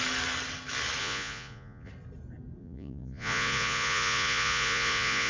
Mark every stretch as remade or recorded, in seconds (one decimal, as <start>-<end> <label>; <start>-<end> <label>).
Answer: 0.0-1.0 recorded; 1.0-1.9 remade; 1.9-2.6 recorded; 2.6-5.3 remade